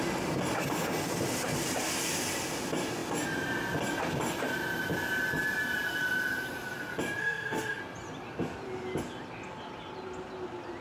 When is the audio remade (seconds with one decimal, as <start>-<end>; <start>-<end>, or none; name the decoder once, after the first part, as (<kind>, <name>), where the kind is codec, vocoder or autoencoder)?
7.2-7.8 (autoencoder, DAC-VAE)